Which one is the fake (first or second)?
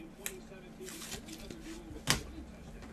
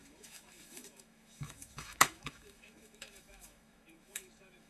second